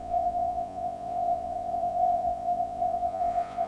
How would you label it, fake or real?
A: fake